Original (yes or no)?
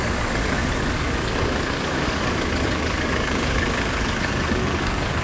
no